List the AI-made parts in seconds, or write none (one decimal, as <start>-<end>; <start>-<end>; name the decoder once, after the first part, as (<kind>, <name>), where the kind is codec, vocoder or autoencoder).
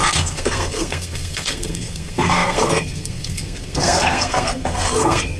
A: 0.0-5.4 (codec, SNAC)